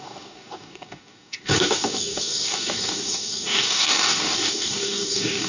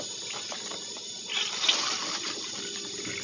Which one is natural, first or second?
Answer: second